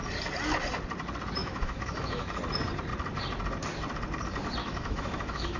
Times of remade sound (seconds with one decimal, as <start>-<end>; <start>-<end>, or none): 1.4-2.4; 4.6-5.6